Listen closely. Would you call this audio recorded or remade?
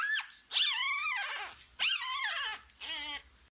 recorded